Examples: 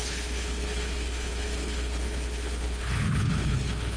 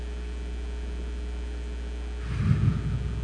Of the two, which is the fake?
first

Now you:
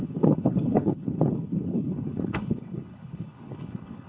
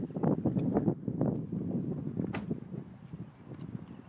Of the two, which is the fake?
first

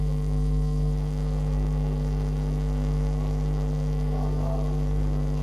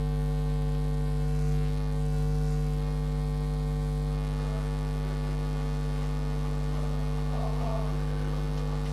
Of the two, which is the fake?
first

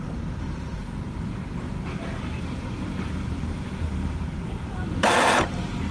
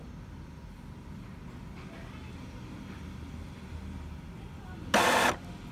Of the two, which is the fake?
first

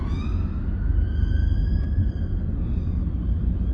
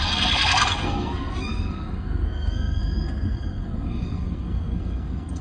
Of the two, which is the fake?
second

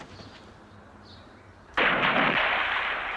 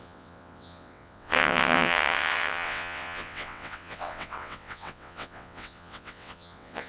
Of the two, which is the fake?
second